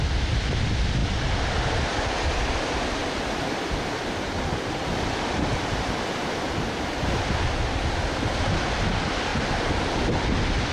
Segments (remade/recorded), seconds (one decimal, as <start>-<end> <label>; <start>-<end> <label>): 0.0-9.3 recorded; 9.3-10.0 remade; 10.0-10.7 recorded